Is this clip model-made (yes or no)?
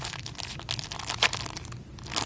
yes